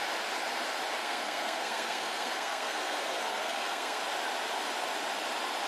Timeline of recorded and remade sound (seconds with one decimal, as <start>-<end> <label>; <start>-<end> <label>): 0.0-1.0 recorded; 1.0-4.0 remade; 4.0-5.7 recorded

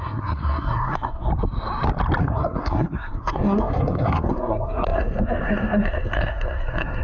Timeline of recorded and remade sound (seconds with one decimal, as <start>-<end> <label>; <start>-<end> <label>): 0.0-1.3 remade; 1.3-2.2 recorded; 2.2-7.0 remade

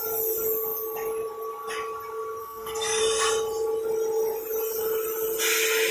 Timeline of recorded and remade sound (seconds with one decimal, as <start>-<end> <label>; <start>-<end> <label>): 0.0-2.4 recorded; 2.4-3.0 remade; 3.0-5.9 recorded

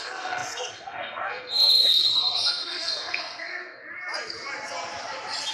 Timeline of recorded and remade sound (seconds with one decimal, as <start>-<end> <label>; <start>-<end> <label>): 0.0-3.8 remade; 3.8-5.5 recorded

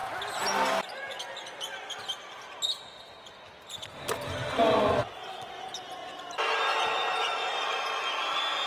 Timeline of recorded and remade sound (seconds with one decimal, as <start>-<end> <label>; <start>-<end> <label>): 0.0-8.7 recorded

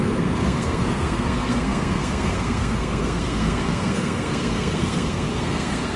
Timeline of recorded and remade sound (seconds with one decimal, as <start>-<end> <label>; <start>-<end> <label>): 0.0-6.0 remade

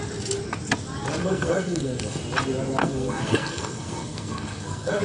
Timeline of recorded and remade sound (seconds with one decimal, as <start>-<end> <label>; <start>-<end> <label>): 0.0-1.2 recorded; 1.2-2.2 remade; 2.2-2.8 recorded; 2.8-5.0 remade

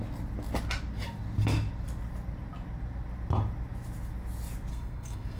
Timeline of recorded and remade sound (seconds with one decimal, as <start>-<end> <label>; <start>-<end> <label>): 0.0-4.7 recorded; 4.7-5.4 remade